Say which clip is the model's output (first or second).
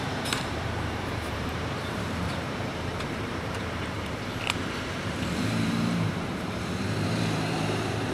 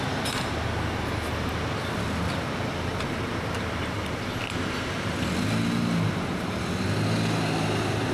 first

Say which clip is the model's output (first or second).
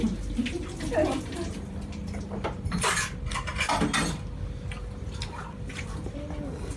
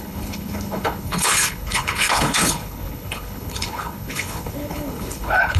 second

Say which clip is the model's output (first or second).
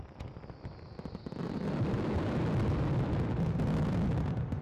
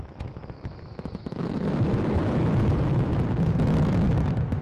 second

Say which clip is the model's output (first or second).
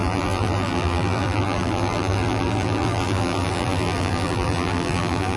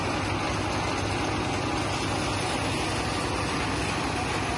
first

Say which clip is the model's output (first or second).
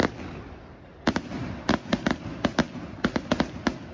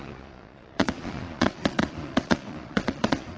second